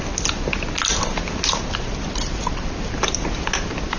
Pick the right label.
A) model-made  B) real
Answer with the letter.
B